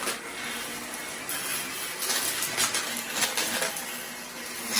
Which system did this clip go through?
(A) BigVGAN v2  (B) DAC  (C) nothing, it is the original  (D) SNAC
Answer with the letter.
C